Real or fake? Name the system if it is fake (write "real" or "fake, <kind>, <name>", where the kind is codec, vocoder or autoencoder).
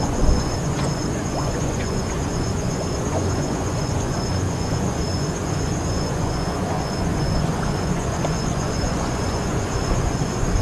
fake, vocoder, Vocos